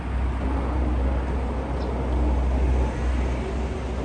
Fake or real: real